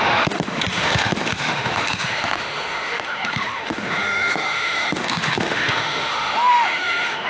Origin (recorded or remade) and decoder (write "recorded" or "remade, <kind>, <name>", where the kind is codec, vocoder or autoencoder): remade, autoencoder, DAC-VAE